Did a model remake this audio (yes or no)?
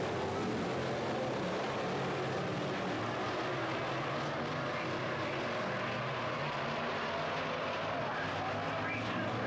no